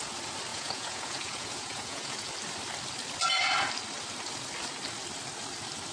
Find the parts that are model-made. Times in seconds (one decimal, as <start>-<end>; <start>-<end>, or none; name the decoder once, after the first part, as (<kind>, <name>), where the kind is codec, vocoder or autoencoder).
0.5-2.3 (vocoder, Vocos)